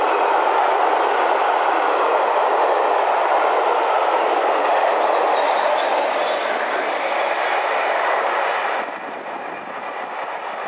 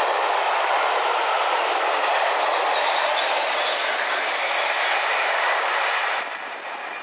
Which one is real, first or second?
first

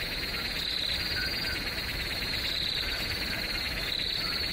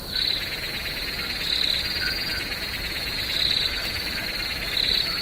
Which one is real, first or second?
second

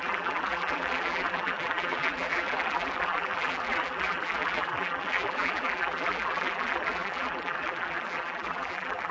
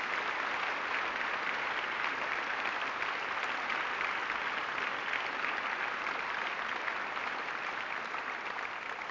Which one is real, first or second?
second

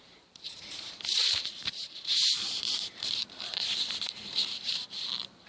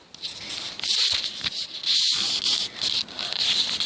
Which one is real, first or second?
second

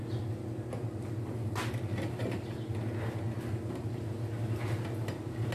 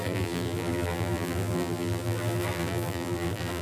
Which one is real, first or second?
first